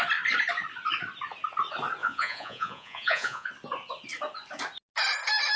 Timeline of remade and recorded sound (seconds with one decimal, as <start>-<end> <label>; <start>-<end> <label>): 0.0-2.0 recorded; 2.0-3.5 remade; 3.5-5.6 recorded